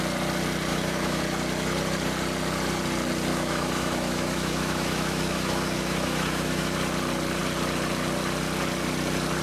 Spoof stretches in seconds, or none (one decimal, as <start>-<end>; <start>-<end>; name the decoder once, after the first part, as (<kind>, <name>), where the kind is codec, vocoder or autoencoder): 0.7-1.2 (autoencoder, DAC-VAE); 3.3-6.7